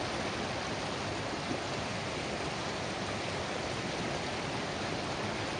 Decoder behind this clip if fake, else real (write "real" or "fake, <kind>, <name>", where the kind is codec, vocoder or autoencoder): real